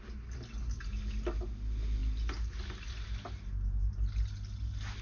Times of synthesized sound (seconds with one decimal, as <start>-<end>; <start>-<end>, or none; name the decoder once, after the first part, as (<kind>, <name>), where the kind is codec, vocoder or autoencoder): none